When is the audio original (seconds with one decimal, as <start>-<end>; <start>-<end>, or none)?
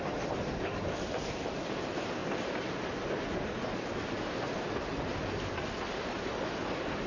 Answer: 0.0-7.1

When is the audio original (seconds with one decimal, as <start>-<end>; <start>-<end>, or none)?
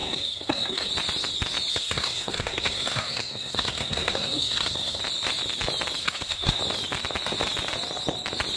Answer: 0.9-1.7; 5.0-6.0; 6.6-8.6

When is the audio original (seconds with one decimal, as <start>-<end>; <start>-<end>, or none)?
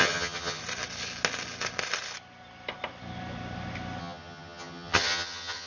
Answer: 0.6-4.0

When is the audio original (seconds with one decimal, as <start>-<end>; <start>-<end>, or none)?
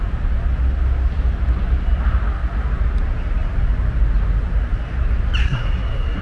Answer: 0.0-5.4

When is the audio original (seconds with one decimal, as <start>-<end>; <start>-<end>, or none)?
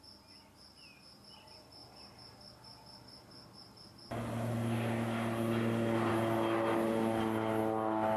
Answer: 0.0-8.2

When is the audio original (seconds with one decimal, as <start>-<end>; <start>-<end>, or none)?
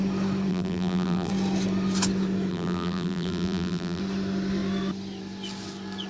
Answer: 0.0-0.5; 1.3-2.5; 4.0-6.1